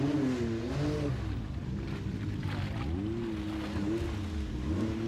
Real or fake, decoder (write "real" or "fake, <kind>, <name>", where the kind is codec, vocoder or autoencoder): real